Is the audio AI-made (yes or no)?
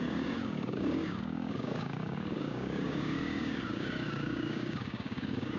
yes